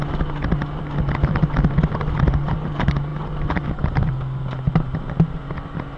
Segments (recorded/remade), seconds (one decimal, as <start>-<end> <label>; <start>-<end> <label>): 0.0-6.0 recorded